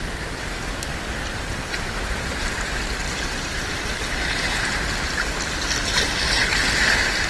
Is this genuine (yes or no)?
yes